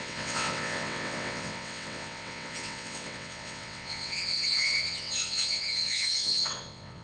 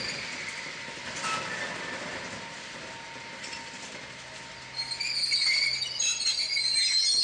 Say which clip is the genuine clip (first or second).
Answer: second